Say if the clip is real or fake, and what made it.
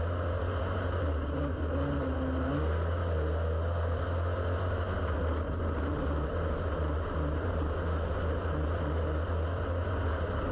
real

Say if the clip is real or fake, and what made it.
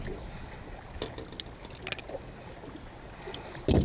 real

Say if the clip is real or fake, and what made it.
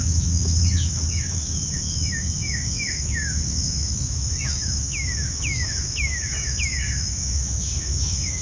fake, autoencoder, DAC-VAE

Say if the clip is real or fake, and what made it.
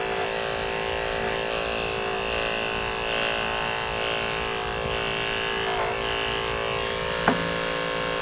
real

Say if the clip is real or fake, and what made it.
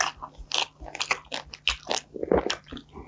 real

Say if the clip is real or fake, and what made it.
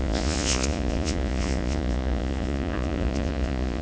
fake, vocoder, Vocos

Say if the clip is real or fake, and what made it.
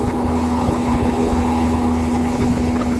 fake, codec, HILCodec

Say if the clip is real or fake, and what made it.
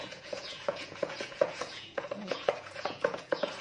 fake, vocoder, Vocos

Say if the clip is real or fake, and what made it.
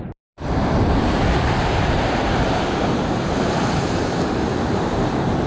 fake, vocoder, BigVGAN v2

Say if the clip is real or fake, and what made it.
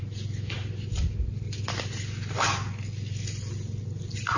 real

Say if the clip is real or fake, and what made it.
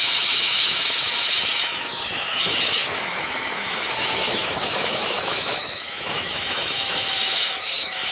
fake, autoencoder, DAC-VAE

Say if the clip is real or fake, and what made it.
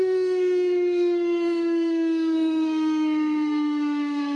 fake, codec, SNAC